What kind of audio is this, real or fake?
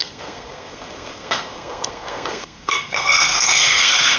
fake